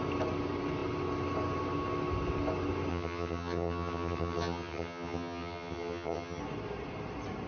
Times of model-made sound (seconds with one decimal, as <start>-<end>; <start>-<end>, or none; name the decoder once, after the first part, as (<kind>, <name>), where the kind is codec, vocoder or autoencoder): 2.9-6.4 (vocoder, HiFi-GAN)